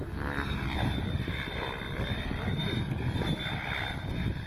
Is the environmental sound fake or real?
real